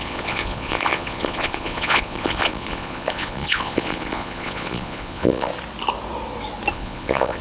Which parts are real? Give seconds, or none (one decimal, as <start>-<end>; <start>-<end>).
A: 5.5-6.7